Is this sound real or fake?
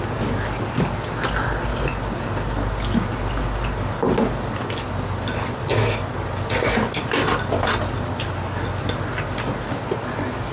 real